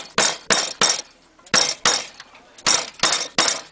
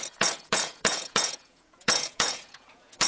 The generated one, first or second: second